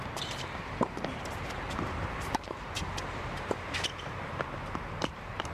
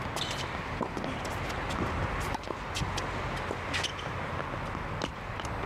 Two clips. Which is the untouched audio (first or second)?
second